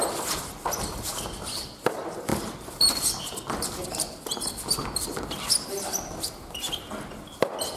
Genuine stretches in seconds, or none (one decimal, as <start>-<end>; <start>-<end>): 0.0-7.8